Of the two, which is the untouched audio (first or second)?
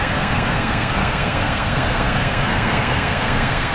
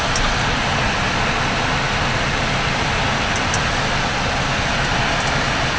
second